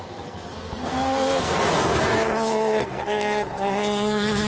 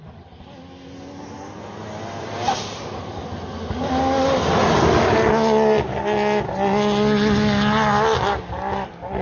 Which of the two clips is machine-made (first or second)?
first